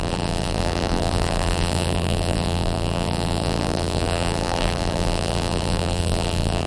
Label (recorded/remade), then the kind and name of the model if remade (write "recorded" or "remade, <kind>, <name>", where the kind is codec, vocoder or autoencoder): remade, vocoder, BigVGAN v2